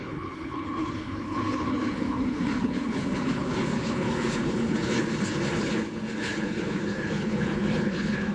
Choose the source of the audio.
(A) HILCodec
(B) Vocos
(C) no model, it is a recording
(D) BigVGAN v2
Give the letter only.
A